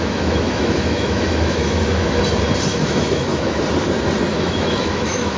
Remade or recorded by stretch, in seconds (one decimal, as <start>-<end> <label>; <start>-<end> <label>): 0.0-2.2 remade; 2.2-2.7 recorded; 2.7-3.6 remade; 3.6-4.3 recorded; 4.3-5.4 remade